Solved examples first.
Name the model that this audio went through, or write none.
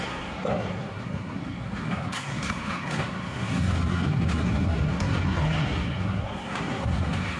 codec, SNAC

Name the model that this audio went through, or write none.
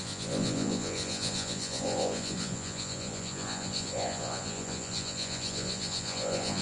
vocoder, Vocos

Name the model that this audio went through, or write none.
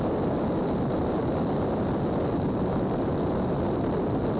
none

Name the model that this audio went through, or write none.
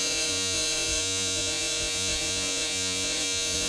vocoder, Vocos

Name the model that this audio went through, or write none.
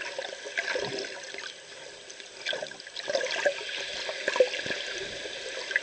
none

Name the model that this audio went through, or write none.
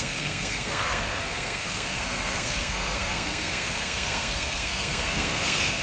codec, SNAC